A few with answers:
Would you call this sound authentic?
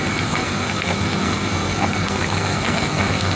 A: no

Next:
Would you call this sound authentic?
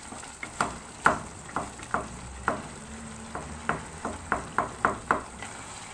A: yes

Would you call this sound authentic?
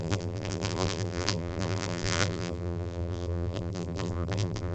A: no